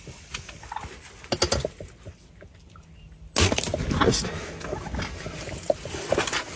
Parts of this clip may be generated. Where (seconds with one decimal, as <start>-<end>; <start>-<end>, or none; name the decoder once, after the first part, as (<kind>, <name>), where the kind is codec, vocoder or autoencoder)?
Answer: none